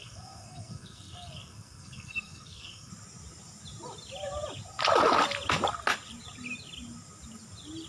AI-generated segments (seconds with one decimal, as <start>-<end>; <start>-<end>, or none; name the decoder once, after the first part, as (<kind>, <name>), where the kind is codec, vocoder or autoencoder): 0.0-2.9 (codec, SNAC)